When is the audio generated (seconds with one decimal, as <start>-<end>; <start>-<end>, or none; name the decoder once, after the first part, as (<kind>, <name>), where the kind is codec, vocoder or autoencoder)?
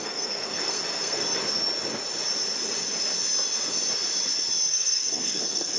0.0-1.2 (codec, SNAC); 4.7-5.8